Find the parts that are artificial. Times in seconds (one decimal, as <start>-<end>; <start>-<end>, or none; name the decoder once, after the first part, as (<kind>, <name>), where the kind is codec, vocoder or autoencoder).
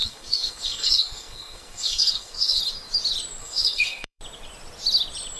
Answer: 0.0-2.6 (codec, SNAC); 3.4-4.2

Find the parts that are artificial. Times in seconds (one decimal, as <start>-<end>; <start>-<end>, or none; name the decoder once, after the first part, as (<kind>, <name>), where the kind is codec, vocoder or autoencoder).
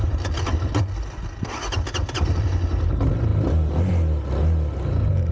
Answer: none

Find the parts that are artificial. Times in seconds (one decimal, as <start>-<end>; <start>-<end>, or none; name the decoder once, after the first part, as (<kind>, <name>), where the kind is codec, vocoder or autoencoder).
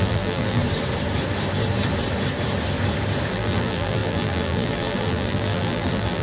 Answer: 0.0-0.6 (vocoder, BigVGAN v2); 3.3-6.2